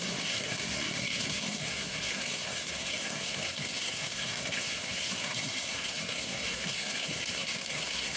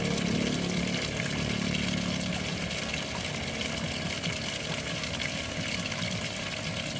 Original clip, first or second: second